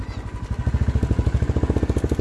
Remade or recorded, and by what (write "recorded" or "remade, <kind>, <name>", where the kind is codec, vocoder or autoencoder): recorded